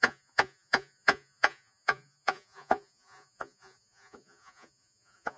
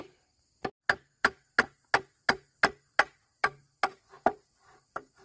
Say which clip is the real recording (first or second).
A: second